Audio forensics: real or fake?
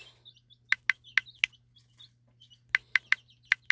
real